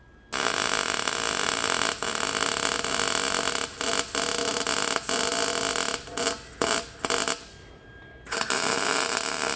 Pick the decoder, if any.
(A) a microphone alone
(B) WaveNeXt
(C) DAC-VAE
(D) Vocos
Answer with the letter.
A